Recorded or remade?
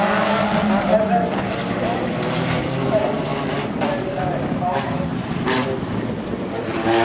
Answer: recorded